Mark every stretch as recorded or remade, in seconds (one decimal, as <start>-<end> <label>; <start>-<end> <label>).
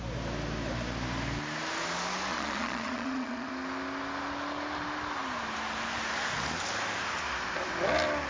0.0-2.3 recorded; 2.3-3.5 remade; 3.5-8.3 recorded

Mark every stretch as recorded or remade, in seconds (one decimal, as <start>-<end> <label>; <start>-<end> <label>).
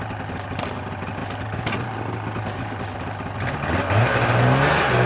0.0-5.1 recorded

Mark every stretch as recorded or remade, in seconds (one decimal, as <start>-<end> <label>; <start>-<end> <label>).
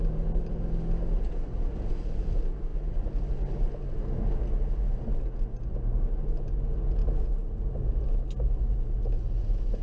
0.0-9.8 recorded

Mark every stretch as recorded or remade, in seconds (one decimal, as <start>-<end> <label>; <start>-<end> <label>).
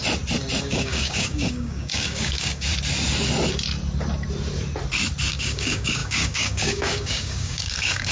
0.0-0.6 recorded; 0.6-2.7 remade; 2.7-5.3 recorded; 5.3-8.1 remade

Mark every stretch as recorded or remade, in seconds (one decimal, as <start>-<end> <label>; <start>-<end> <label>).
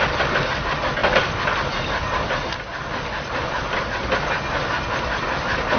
0.0-1.0 recorded; 1.0-3.8 remade; 3.8-5.8 recorded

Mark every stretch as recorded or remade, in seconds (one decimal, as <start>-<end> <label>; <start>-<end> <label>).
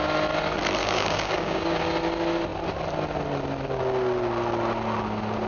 0.0-0.8 recorded; 0.8-1.8 remade; 1.8-5.5 recorded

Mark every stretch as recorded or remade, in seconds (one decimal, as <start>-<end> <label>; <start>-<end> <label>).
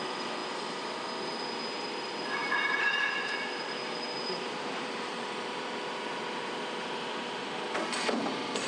0.0-2.4 recorded; 2.4-7.5 remade; 7.5-8.7 recorded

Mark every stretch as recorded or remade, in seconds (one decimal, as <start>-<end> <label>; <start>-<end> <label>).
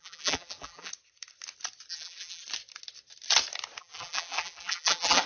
0.0-0.9 remade; 0.9-1.9 recorded; 1.9-2.4 remade; 2.4-3.8 recorded; 3.8-5.3 remade